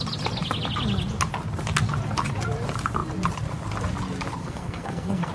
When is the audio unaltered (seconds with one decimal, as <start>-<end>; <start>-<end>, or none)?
0.0-4.4